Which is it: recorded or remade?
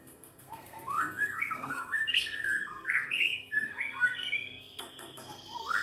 remade